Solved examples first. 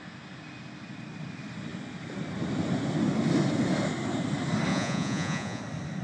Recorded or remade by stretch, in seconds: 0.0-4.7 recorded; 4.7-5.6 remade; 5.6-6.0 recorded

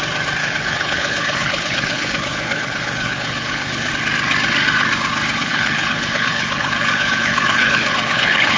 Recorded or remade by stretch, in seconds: 0.0-0.4 recorded; 0.4-3.9 remade; 3.9-5.4 recorded; 5.4-8.6 remade

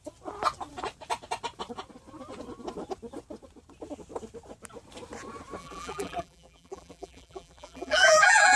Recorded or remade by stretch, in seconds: 0.0-5.6 recorded; 5.6-8.6 remade

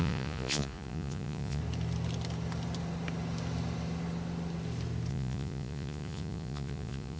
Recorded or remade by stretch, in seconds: 0.0-1.6 remade; 1.6-5.1 recorded; 5.1-7.2 remade

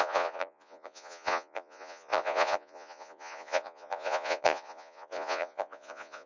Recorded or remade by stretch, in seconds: 0.0-6.3 remade